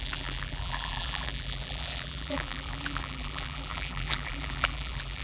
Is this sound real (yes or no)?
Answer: no